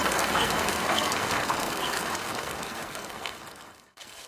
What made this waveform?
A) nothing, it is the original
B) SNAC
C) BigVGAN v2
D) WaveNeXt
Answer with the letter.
B